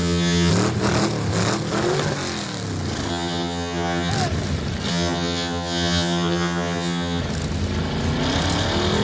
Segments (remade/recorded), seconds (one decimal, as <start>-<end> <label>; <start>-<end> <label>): 0.0-0.5 remade; 0.5-3.1 recorded; 3.1-4.1 remade; 4.1-4.9 recorded; 4.9-7.2 remade; 7.2-9.0 recorded